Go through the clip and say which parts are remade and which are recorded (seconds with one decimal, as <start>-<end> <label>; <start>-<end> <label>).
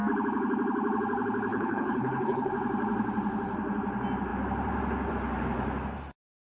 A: 0.0-1.5 recorded; 1.5-2.5 remade; 2.5-6.6 recorded